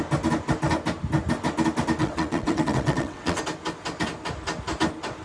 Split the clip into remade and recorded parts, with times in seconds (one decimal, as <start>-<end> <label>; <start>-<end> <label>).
0.0-2.0 recorded; 2.0-3.4 remade; 3.4-5.2 recorded